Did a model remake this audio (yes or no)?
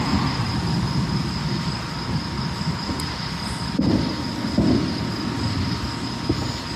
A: no